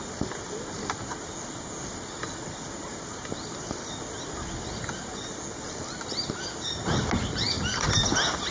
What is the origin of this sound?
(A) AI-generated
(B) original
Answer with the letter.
B